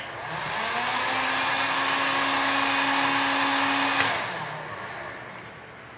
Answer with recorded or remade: recorded